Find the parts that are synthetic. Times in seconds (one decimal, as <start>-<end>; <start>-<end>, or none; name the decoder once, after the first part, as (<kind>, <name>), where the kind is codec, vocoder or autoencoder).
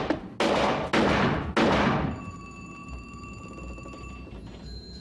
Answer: 2.8-5.0 (vocoder, BigVGAN v2)